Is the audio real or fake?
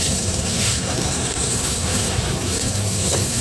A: fake